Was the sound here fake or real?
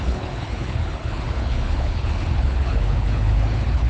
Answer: fake